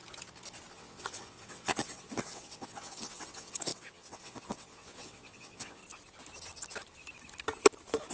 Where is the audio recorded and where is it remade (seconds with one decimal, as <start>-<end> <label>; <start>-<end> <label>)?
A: 0.0-0.7 recorded; 0.7-5.8 remade; 5.8-8.1 recorded